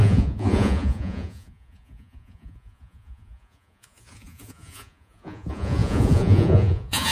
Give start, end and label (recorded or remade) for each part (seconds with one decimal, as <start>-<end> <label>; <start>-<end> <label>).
0.0-7.1 remade